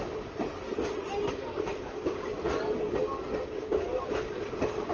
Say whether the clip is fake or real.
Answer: real